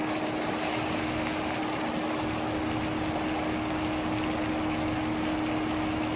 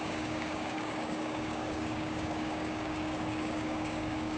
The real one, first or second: first